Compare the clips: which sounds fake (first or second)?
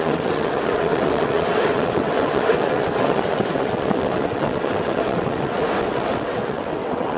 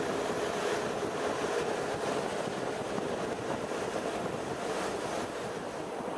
first